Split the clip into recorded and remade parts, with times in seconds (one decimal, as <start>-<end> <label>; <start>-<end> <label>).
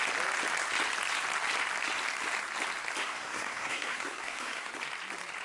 0.0-3.0 recorded; 3.0-4.7 remade; 4.7-5.4 recorded